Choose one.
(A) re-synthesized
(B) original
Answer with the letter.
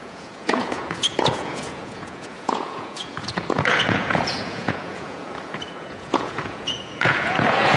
A